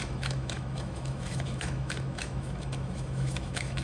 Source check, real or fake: fake